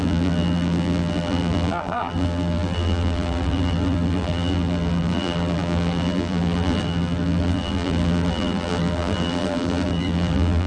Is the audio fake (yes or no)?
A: yes